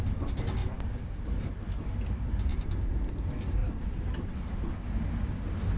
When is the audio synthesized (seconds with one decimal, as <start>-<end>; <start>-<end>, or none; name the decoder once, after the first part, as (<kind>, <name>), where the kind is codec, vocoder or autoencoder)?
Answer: 0.6-1.3 (vocoder, BigVGAN v2); 2.5-3.1; 3.6-4.7